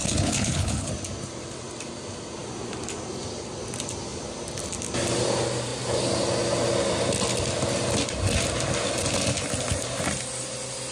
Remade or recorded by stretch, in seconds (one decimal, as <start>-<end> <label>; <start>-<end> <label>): 0.0-0.9 remade; 0.9-10.9 recorded